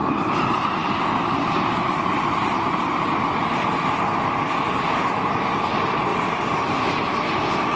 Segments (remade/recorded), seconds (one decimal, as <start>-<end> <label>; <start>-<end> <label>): 0.0-6.1 recorded; 6.1-7.1 remade; 7.1-7.8 recorded